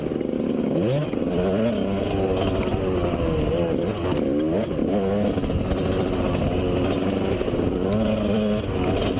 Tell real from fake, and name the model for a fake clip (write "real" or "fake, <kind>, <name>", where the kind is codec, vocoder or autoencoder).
real